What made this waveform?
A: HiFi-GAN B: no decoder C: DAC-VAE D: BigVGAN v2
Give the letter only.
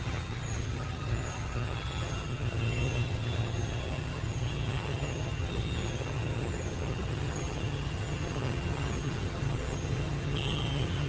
A